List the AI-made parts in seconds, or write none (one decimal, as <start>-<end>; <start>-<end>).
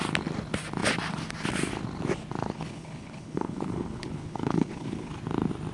2.4-5.1